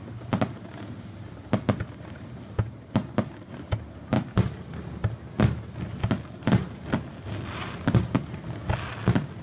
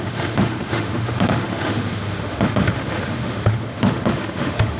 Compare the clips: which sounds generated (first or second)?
second